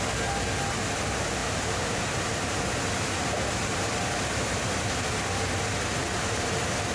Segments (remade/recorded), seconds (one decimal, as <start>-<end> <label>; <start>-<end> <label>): 0.0-1.4 recorded; 1.4-2.6 remade; 2.6-3.6 recorded; 3.6-5.6 remade; 5.6-6.0 recorded; 6.0-6.5 remade; 6.5-6.9 recorded